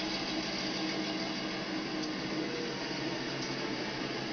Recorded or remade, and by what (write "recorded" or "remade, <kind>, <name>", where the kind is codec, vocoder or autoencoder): recorded